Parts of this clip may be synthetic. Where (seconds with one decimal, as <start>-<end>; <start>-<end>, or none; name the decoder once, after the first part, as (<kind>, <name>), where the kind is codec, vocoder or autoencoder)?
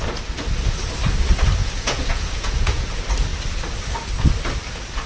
1.6-2.9 (vocoder, Vocos)